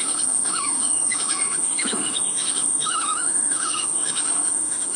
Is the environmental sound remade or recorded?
remade